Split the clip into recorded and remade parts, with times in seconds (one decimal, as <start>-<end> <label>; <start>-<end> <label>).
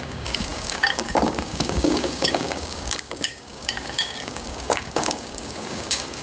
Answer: 0.0-6.2 remade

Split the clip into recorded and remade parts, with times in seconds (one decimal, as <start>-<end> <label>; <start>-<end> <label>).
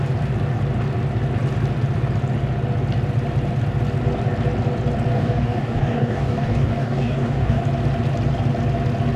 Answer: 0.0-5.1 recorded; 5.1-7.6 remade; 7.6-9.2 recorded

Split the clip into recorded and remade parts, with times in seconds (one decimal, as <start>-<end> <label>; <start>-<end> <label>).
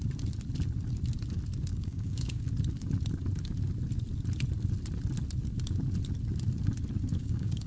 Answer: 0.0-1.7 recorded; 1.7-2.4 remade; 2.4-7.2 recorded; 7.2-7.7 remade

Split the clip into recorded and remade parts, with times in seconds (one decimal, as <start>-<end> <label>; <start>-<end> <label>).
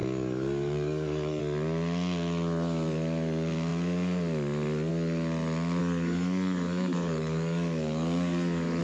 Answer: 0.0-1.4 remade; 1.4-5.8 recorded; 5.8-8.8 remade